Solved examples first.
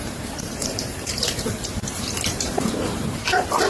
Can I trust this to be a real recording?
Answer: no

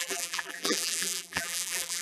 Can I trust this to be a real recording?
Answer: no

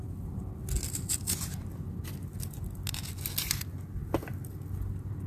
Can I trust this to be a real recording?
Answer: yes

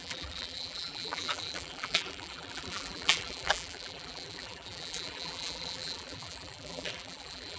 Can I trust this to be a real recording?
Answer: no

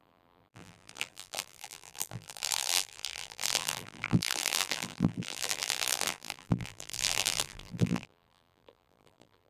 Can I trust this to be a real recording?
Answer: no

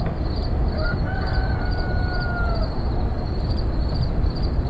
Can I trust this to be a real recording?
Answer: yes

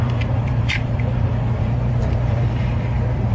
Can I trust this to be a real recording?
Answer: no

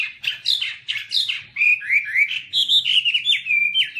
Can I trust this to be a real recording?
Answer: yes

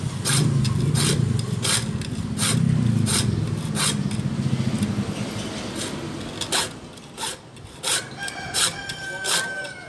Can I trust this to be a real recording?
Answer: yes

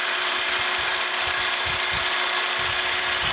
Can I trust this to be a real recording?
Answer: yes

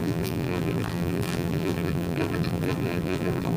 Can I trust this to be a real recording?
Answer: no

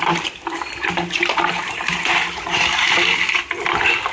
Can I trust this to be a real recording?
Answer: no